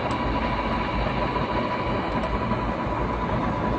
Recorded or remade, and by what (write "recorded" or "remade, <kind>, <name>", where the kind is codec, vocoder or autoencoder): recorded